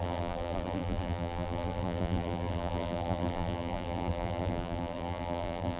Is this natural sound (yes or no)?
no